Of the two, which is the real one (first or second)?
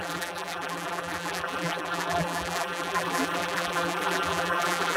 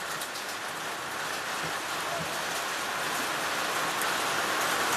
second